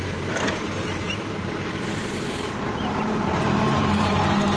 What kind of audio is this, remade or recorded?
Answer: remade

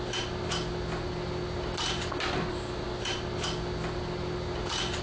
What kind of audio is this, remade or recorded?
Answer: recorded